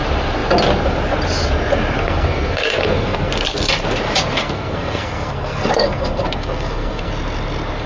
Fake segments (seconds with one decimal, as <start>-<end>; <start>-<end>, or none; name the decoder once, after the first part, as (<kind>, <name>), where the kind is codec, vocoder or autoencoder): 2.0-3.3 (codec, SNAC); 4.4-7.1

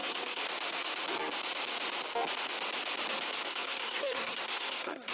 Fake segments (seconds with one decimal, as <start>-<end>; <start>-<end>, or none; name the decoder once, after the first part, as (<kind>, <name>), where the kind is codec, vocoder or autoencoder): 0.0-0.4 (codec, SNAC); 3.5-5.1

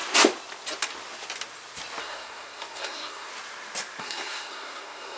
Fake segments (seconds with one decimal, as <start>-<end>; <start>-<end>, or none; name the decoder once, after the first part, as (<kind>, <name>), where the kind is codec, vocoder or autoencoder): 2.0-3.3 (codec, SNAC); 4.0-5.2

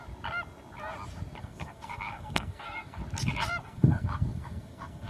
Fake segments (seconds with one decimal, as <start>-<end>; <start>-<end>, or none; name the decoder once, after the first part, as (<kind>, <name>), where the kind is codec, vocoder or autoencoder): 1.4-3.0 (codec, SNAC); 3.6-5.1

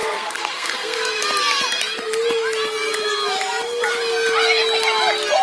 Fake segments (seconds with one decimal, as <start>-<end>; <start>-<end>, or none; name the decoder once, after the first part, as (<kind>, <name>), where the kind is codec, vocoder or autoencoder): 0.0-1.2 (codec, SNAC)

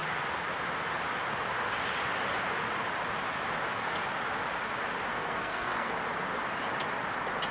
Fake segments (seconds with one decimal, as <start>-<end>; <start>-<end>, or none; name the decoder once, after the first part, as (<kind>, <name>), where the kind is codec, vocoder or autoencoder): 5.1-5.9 (codec, SNAC)

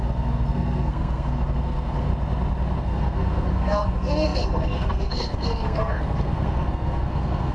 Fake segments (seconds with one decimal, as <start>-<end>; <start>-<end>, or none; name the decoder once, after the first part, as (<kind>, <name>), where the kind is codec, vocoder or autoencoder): 0.0-2.1 (codec, SNAC); 2.8-7.5